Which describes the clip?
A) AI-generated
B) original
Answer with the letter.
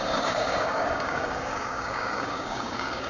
A